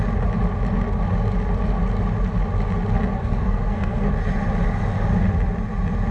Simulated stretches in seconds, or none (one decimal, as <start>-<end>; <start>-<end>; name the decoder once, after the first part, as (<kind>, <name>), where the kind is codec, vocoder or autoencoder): 3.2-4.1 (codec, SNAC)